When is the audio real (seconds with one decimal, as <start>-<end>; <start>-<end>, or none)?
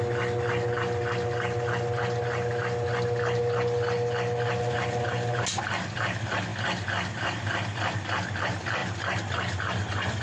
0.0-10.2